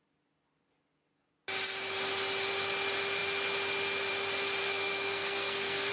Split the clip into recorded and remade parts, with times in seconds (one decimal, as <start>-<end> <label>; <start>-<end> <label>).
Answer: 0.0-4.6 recorded; 4.6-5.9 remade